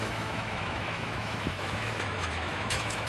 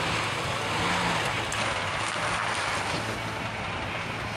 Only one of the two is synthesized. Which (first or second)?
first